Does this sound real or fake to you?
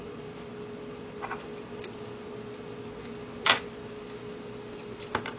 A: real